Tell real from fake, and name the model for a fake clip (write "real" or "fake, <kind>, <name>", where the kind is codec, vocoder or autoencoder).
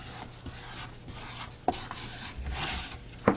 real